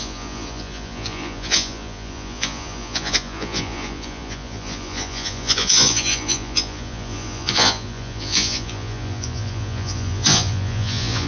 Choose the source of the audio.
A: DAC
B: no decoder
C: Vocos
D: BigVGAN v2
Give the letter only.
C